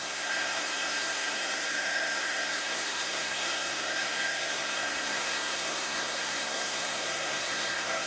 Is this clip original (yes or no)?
no